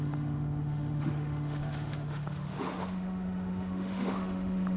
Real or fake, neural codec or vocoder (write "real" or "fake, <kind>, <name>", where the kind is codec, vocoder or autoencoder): fake, autoencoder, DAC-VAE